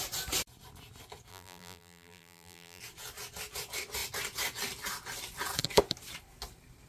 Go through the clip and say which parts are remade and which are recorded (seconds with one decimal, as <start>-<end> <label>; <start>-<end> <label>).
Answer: 0.0-1.3 recorded; 1.3-2.8 remade; 2.8-6.9 recorded

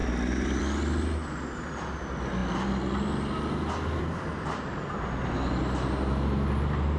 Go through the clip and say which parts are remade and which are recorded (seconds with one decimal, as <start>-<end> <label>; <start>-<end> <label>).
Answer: 0.0-7.0 recorded

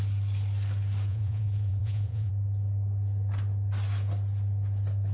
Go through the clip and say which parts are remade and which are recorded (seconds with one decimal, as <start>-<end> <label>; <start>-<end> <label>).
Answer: 0.0-1.1 recorded; 1.1-2.3 remade; 2.3-5.1 recorded

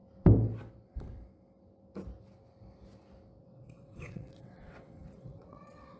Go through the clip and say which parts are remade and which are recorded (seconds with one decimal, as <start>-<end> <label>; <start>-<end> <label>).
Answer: 0.0-3.4 recorded; 3.4-6.0 remade